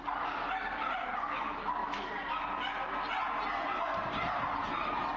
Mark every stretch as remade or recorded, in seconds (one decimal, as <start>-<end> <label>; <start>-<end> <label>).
0.0-5.2 recorded